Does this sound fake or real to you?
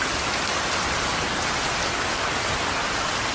real